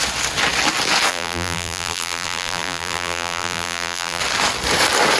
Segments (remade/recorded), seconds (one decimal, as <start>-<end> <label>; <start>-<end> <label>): 0.0-1.1 recorded; 1.1-4.2 remade; 4.2-5.2 recorded